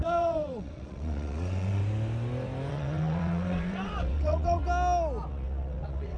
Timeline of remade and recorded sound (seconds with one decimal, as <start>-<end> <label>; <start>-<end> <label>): 0.0-1.8 remade; 1.8-2.7 recorded; 2.7-4.6 remade; 4.6-5.3 recorded; 5.3-6.2 remade